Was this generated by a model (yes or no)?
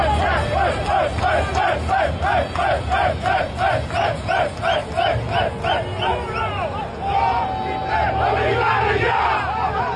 no